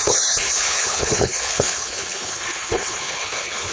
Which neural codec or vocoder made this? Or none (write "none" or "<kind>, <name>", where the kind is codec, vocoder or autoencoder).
codec, HILCodec